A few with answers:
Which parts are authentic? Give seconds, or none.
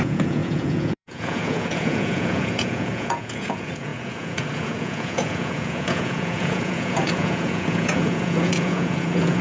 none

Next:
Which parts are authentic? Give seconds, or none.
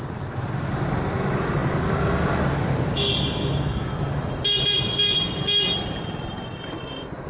0.0-7.3